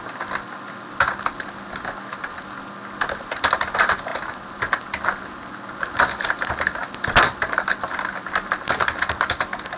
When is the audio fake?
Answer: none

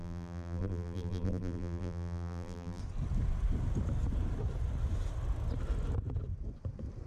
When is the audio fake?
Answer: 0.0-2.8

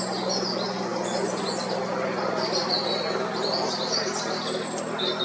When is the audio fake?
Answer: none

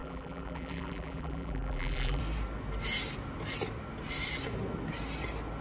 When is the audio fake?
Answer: 0.0-2.2